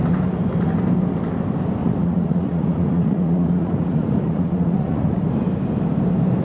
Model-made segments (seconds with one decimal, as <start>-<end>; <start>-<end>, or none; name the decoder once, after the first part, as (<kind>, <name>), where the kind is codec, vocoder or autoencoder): 1.8-5.2 (vocoder, Vocos)